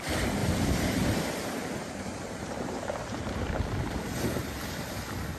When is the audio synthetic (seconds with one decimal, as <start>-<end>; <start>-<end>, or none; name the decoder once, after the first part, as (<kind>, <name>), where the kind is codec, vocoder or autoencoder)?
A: 0.4-3.6 (vocoder, BigVGAN v2)